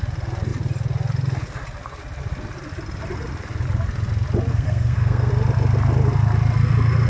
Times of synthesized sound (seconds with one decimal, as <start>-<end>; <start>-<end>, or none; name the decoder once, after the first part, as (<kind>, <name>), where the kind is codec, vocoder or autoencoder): 4.5-5.3 (codec, SNAC)